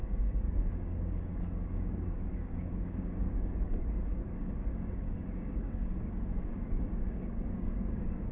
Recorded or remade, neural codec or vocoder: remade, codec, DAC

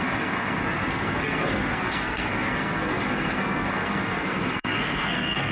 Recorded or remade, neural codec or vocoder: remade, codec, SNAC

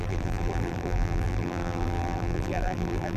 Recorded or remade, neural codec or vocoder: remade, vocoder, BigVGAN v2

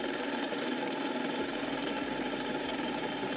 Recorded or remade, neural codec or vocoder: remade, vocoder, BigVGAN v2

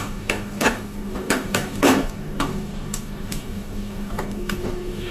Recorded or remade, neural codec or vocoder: remade, codec, DAC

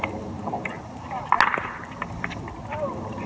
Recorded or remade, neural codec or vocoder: recorded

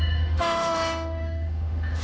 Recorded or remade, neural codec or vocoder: remade, autoencoder, DAC-VAE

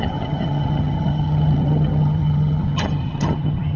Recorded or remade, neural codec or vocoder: remade, vocoder, HiFi-GAN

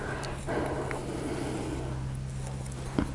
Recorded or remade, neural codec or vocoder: recorded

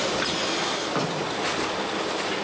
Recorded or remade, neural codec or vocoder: recorded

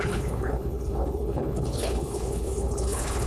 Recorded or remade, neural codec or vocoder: remade, codec, HILCodec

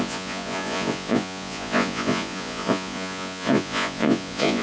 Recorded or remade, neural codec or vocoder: remade, vocoder, Vocos